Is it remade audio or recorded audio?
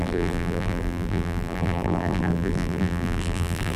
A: remade